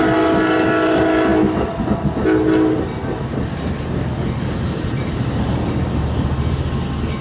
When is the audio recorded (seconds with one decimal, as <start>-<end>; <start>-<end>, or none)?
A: 0.0-7.2